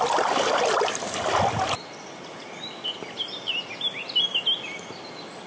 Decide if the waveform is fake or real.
real